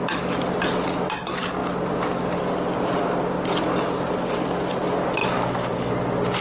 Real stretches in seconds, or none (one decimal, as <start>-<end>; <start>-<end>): 0.0-5.2; 5.9-6.4